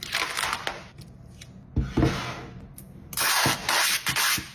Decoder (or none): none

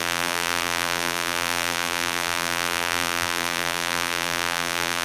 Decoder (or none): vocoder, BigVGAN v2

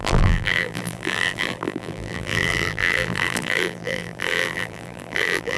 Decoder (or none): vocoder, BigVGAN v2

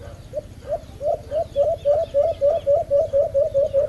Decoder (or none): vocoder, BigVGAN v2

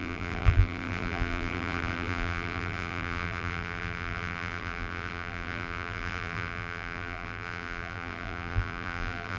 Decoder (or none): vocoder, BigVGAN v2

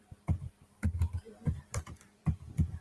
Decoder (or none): vocoder, BigVGAN v2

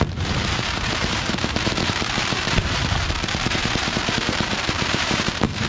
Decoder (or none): vocoder, BigVGAN v2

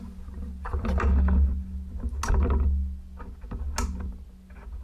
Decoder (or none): none